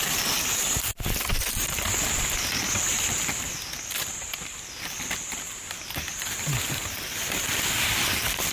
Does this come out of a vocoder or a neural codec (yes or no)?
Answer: yes